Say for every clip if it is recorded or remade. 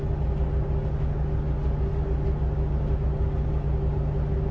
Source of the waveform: recorded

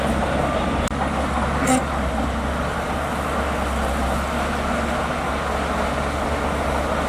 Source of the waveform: recorded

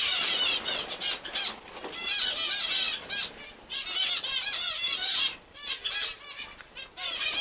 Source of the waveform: recorded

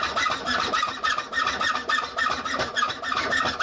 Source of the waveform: recorded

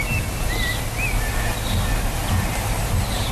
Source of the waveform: recorded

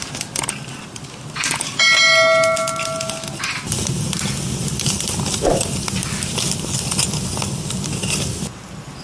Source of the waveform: recorded